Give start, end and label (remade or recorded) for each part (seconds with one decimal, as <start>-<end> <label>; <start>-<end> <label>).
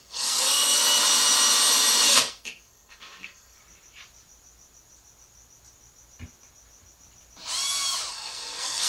0.0-0.8 remade; 0.8-2.1 recorded; 2.1-3.6 remade; 3.6-8.1 recorded; 8.1-8.9 remade